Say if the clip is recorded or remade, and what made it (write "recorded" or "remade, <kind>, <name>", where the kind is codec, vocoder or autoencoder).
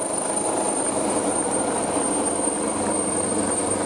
recorded